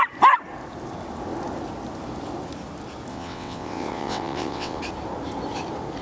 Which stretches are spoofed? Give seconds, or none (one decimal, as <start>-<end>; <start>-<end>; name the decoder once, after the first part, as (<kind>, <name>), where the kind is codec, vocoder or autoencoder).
3.1-4.8 (vocoder, WaveNeXt)